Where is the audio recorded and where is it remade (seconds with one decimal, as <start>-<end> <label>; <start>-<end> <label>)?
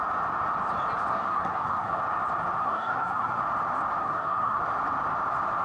0.0-1.1 recorded; 1.1-2.0 remade; 2.0-2.6 recorded; 2.6-3.4 remade; 3.4-4.0 recorded; 4.0-4.6 remade; 4.6-5.6 recorded